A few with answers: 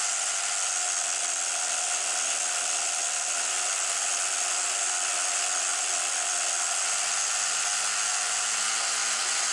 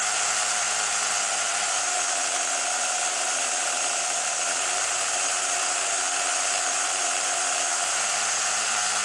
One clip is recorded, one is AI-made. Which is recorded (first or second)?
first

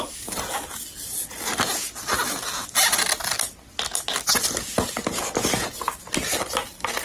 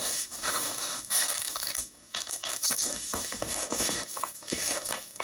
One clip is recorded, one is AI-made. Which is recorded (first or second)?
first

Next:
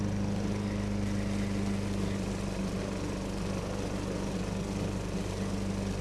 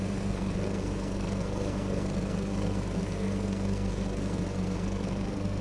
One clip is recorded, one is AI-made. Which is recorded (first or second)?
first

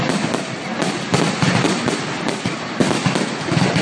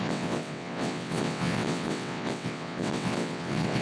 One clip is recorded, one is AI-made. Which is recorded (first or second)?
first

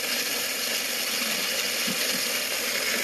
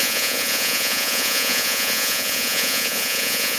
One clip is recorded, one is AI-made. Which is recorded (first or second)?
first